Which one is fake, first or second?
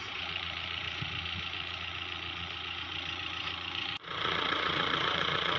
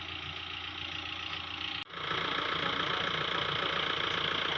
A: first